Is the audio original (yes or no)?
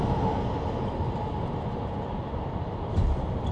no